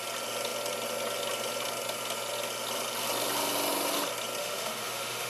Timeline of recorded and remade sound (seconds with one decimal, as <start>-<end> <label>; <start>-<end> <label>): 0.0-4.4 recorded; 4.4-5.3 remade